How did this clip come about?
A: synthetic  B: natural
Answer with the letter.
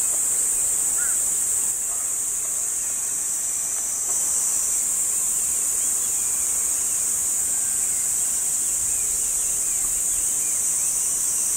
B